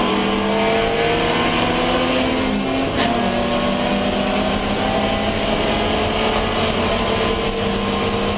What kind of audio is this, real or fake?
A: real